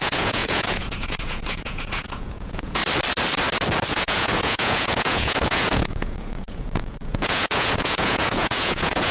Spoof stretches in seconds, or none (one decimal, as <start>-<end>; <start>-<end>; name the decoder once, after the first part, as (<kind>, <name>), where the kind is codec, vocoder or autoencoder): 0.0-2.8 (vocoder, Vocos); 3.9-9.1